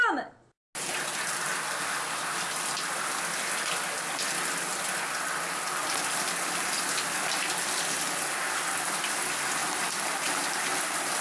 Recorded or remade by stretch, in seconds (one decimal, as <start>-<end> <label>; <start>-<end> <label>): 0.0-9.6 recorded; 9.6-11.2 remade